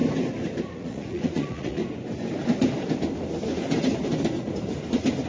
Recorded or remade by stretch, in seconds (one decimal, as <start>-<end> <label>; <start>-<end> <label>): 0.0-0.7 recorded; 0.7-1.8 remade; 1.8-5.3 recorded